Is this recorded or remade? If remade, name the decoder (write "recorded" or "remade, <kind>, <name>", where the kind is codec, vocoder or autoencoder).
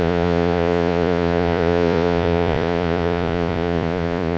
remade, vocoder, Vocos